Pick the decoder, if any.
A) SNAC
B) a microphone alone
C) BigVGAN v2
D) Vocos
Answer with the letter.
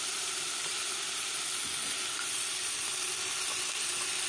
B